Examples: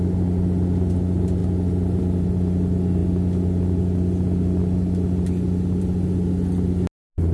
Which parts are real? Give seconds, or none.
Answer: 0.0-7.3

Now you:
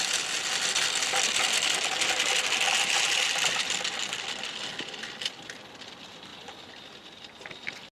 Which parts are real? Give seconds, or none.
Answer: 0.0-7.9

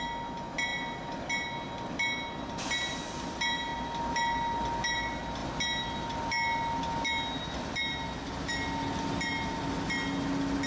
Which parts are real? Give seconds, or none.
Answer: 0.0-10.7

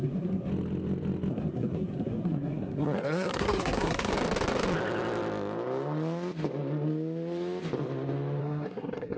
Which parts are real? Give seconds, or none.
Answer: 0.5-1.3; 4.1-8.4

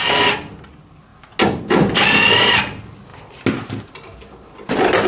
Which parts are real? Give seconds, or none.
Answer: 0.0-5.1

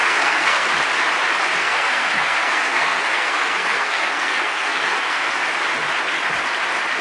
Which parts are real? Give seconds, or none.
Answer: 0.7-1.6; 5.3-7.0

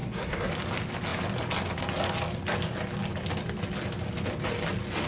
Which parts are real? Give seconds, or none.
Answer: 0.5-5.1

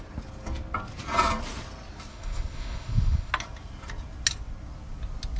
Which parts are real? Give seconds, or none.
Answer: 0.0-2.1; 3.3-5.4